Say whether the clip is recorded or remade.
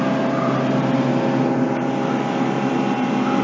recorded